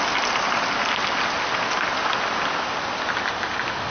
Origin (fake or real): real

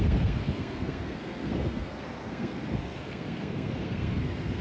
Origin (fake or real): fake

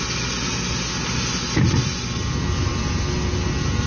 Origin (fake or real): real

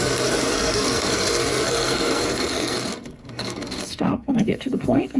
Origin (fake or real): fake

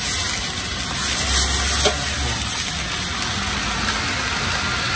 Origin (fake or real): real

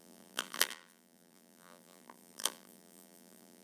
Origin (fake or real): fake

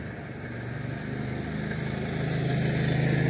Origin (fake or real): real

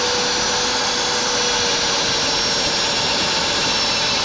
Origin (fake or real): real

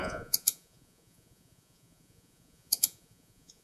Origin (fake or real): fake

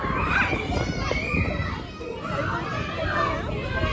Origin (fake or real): real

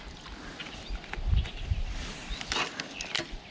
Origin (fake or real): real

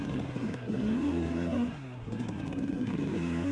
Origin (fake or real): fake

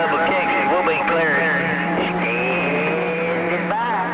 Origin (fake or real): real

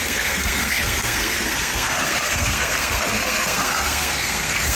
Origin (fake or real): fake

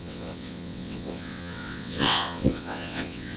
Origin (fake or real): fake